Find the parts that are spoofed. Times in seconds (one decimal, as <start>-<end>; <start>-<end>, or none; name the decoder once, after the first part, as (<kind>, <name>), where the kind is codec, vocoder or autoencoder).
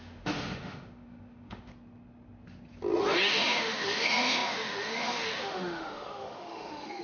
0.0-1.7 (autoencoder, DAC-VAE); 3.3-7.0